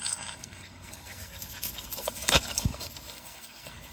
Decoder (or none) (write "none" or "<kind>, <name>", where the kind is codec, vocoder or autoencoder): codec, SNAC